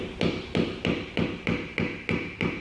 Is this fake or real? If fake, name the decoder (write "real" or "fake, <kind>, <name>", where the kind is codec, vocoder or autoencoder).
real